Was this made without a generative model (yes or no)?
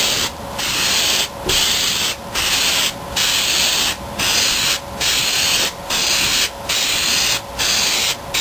yes